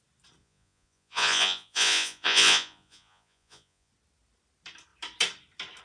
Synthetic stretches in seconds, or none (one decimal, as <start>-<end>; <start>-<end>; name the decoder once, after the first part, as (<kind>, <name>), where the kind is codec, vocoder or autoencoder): 0.4-3.9 (vocoder, Vocos)